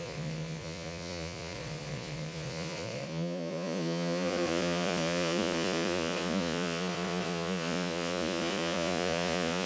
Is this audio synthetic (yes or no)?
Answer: yes